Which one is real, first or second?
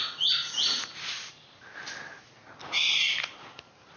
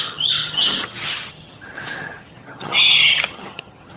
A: first